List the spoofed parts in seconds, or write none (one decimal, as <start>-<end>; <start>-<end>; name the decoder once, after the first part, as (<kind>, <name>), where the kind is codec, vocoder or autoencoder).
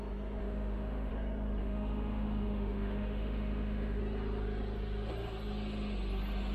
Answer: 0.4-1.1 (autoencoder, DAC-VAE); 1.6-4.0